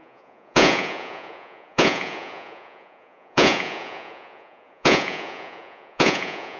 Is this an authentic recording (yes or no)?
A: no